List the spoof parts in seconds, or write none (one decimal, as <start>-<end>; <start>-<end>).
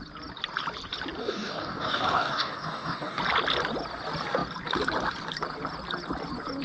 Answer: 1.2-3.2